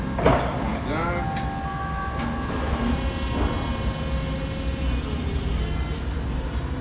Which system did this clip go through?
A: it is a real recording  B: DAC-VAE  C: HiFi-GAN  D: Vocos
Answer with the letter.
A